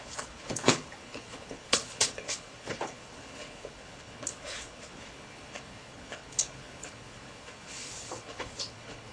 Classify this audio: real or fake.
fake